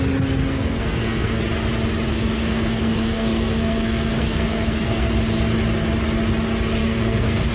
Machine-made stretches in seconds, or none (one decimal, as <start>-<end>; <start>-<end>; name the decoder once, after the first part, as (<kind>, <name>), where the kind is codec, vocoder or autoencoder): 0.4-1.4 (codec, SNAC); 2.1-5.1; 6.8-7.5